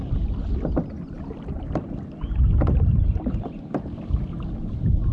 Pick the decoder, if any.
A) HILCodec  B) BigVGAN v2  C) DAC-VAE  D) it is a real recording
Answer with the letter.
D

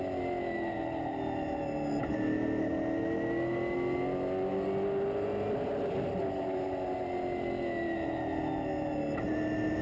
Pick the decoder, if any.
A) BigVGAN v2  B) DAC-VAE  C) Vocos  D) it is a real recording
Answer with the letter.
D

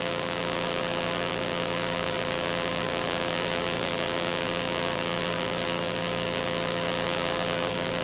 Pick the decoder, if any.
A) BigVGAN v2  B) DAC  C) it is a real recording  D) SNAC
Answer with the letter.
A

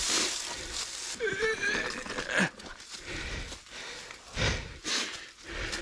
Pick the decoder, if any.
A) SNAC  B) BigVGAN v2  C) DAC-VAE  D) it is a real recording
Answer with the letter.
D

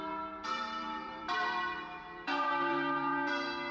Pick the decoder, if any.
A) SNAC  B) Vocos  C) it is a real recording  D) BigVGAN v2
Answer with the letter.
D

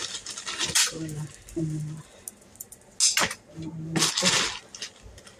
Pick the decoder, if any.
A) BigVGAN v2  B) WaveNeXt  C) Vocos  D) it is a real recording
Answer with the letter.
D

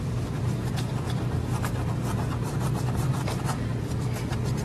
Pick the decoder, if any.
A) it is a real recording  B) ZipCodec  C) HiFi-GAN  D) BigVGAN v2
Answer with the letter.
D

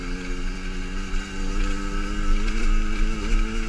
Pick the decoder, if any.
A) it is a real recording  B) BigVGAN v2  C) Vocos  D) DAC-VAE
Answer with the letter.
A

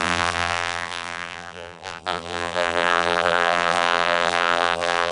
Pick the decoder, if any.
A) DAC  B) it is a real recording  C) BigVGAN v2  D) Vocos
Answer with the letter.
C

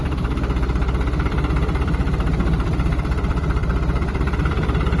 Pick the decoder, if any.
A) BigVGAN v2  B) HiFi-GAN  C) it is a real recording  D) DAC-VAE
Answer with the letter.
A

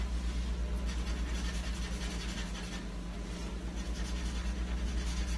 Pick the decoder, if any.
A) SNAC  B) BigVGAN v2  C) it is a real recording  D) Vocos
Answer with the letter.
C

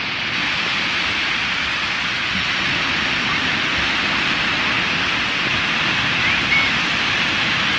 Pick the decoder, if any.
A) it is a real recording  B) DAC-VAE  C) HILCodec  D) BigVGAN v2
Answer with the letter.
A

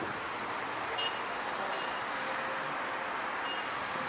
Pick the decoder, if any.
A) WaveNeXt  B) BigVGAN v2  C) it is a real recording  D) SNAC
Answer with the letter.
B